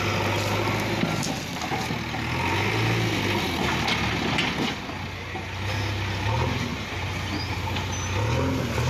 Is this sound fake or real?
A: real